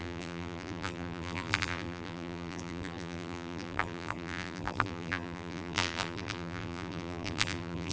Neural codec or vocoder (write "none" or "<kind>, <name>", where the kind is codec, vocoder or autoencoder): vocoder, BigVGAN v2